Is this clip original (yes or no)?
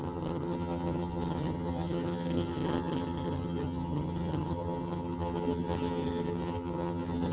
no